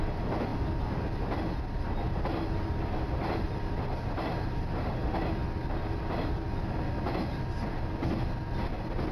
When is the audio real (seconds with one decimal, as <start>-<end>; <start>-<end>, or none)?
0.0-9.1